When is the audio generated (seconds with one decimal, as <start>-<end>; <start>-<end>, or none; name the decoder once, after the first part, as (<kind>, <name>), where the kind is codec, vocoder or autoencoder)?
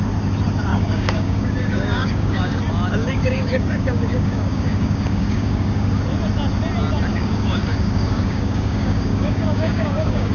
0.7-2.6 (codec, DAC); 3.0-6.0; 7.1-10.3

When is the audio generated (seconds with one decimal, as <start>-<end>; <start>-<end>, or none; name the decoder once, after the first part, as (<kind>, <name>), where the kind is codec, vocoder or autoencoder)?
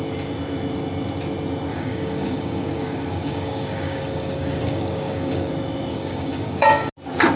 1.7-5.5 (codec, DAC); 5.9-6.9